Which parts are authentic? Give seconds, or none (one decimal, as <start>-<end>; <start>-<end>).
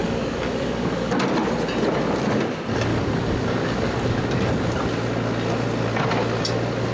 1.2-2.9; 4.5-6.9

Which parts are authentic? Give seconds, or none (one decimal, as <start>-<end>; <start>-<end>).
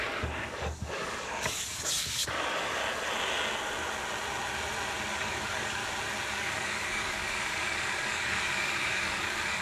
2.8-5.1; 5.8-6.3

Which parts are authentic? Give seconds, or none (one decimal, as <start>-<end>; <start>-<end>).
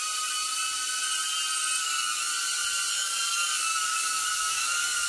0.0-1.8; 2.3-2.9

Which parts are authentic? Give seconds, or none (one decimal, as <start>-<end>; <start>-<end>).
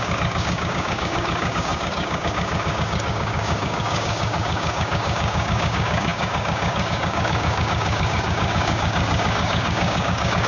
none